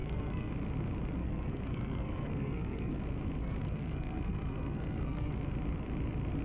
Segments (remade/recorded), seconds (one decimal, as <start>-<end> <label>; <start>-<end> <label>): 0.0-0.5 remade; 0.5-1.2 recorded; 1.2-3.0 remade; 3.0-3.4 recorded; 3.4-5.3 remade; 5.3-6.4 recorded